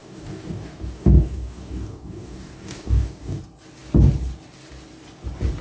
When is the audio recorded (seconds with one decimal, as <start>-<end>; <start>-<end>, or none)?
3.4-5.6